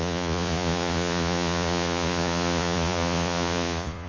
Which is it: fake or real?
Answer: fake